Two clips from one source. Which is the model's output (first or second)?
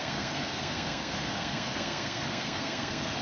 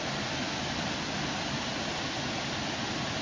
first